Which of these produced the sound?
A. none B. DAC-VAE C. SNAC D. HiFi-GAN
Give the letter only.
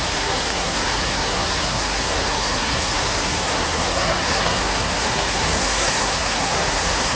C